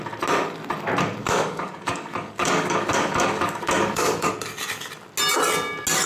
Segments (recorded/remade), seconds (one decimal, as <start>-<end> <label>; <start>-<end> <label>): 0.0-1.2 recorded; 1.2-4.3 remade; 4.3-6.1 recorded